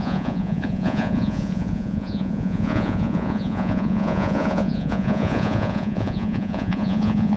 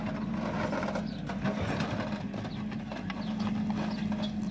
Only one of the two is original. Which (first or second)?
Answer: second